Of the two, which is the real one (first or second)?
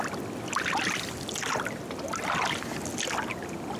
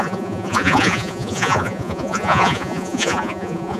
first